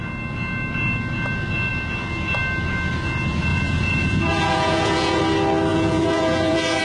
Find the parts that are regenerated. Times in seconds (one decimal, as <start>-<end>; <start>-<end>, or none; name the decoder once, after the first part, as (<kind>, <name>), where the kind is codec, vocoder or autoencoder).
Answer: 3.5-5.2 (vocoder, Vocos); 5.7-6.8